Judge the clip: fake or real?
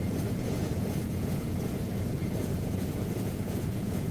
fake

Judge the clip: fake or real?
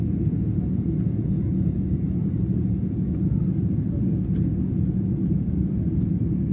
fake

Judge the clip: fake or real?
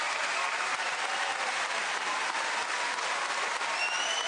real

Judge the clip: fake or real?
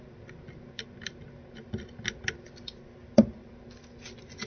real